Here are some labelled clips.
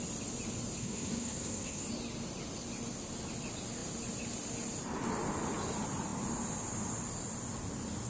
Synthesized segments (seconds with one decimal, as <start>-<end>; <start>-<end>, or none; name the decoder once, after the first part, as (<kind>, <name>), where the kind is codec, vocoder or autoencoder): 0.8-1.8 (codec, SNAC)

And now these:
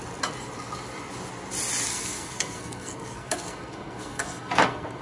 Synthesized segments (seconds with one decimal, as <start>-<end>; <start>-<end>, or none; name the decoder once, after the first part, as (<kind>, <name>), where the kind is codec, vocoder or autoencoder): 1.9-5.0 (codec, SNAC)

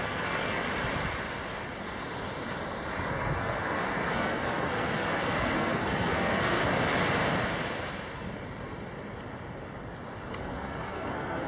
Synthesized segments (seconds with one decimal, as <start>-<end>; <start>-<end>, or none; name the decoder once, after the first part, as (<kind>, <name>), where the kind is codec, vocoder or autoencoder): 0.0-0.6 (codec, SNAC); 3.1-6.6; 10.4-11.5